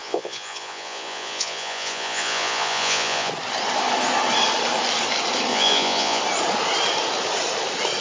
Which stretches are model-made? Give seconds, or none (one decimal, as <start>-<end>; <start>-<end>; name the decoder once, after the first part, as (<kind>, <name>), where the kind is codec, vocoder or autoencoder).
0.0-3.3 (vocoder, Vocos); 5.5-6.2